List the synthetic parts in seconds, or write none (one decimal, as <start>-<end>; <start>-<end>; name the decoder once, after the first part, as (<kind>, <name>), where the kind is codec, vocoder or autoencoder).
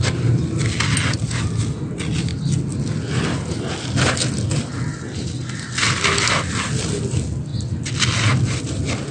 none